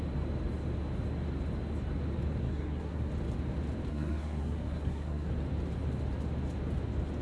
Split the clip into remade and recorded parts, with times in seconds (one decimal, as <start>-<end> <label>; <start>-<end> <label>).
0.0-2.4 recorded; 2.4-3.1 remade; 3.1-3.9 recorded; 3.9-5.3 remade; 5.3-7.2 recorded